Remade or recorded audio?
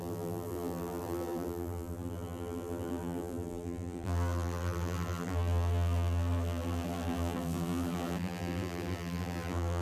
remade